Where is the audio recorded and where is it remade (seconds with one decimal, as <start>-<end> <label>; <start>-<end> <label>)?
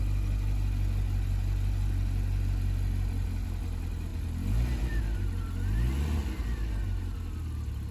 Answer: 0.0-7.9 recorded